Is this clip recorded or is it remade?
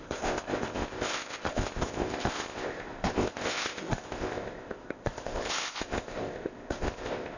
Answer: remade